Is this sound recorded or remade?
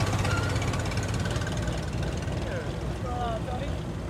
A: recorded